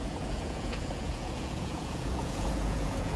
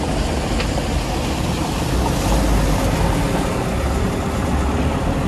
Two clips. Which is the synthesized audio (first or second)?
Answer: first